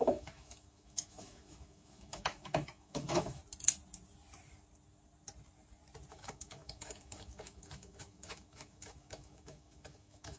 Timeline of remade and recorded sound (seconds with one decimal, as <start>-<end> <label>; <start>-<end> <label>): 0.0-3.4 remade; 3.4-6.1 recorded; 6.1-10.4 remade

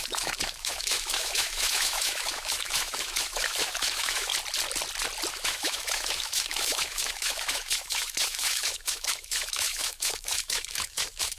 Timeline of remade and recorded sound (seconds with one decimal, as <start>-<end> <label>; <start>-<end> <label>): 0.0-4.3 remade; 4.3-5.3 recorded; 5.3-11.4 remade

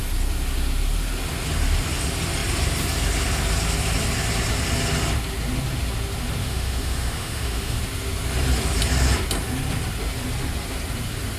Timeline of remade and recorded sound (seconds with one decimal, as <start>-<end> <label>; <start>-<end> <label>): 0.0-6.4 recorded; 6.4-7.8 remade; 7.8-11.4 recorded

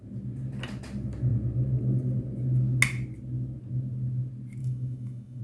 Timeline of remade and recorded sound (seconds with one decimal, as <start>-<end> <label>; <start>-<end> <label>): 0.0-4.6 recorded; 4.6-5.4 remade

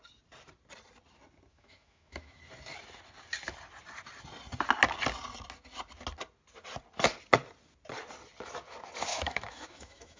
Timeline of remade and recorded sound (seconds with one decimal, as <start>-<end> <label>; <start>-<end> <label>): 0.0-1.5 recorded; 1.5-2.4 remade; 2.4-9.1 recorded; 9.1-10.2 remade

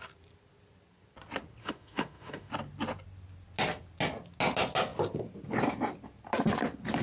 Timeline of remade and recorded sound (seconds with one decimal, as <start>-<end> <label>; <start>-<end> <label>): 0.0-1.6 recorded; 1.6-2.5 remade; 2.5-7.0 recorded